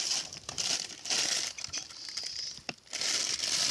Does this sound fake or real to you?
fake